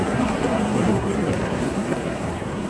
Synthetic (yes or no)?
yes